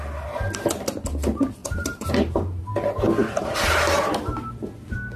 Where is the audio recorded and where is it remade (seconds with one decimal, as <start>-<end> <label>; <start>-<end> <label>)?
0.0-1.6 recorded; 1.6-2.6 remade; 2.6-3.2 recorded; 3.2-4.4 remade; 4.4-5.2 recorded